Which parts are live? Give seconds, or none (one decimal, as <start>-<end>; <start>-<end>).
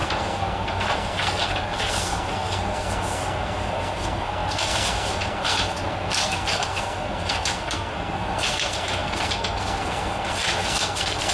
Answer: none